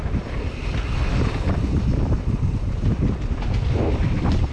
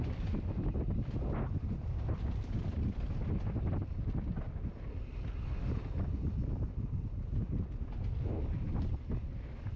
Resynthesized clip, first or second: first